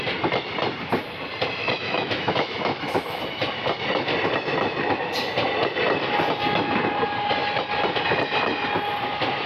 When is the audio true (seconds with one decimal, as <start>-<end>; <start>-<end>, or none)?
0.0-1.6; 3.2-9.5